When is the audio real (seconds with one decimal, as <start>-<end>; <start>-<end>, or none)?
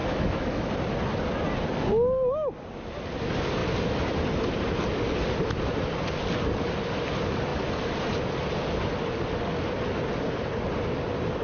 0.7-11.4